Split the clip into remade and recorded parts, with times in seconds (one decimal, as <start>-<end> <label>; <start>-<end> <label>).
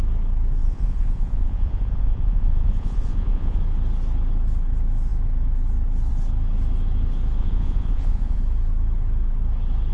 0.0-0.6 recorded; 0.6-3.6 remade; 3.6-7.4 recorded; 7.4-8.4 remade; 8.4-9.9 recorded